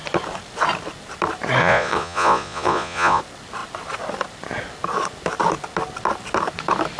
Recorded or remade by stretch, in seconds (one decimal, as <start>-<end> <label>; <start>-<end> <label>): 0.0-1.6 recorded; 1.6-3.2 remade; 3.2-7.0 recorded